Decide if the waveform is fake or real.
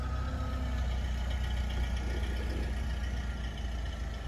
real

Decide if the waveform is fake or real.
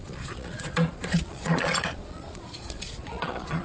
fake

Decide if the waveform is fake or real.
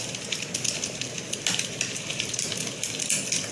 real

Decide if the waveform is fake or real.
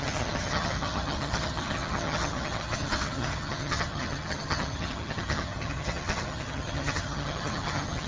fake